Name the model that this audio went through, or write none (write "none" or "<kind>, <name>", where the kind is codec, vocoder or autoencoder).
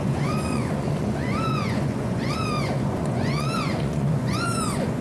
vocoder, Vocos